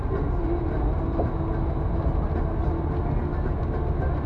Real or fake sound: real